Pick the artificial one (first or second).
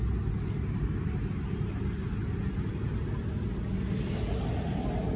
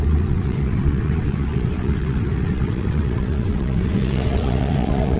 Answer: second